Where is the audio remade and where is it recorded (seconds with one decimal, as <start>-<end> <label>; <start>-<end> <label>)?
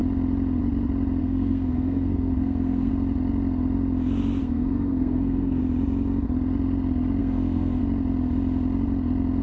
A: 0.0-1.2 recorded; 1.2-2.9 remade; 2.9-4.4 recorded; 4.4-5.6 remade; 5.6-7.2 recorded; 7.2-7.8 remade; 7.8-9.4 recorded